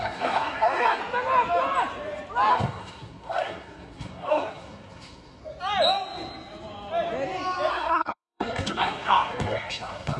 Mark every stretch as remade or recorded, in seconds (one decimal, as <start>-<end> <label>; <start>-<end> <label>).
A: 0.0-1.0 remade; 1.0-2.5 recorded; 2.5-5.4 remade; 5.4-7.7 recorded; 7.7-10.2 remade